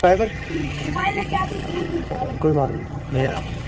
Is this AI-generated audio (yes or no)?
yes